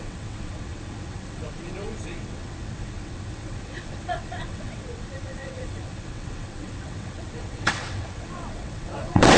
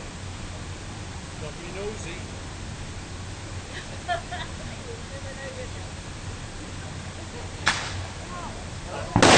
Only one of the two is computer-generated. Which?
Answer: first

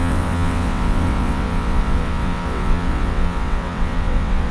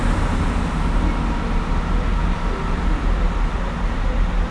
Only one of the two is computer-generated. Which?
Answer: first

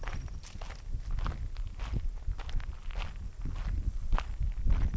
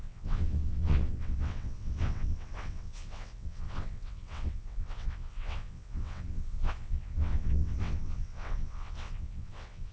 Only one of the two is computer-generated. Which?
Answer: second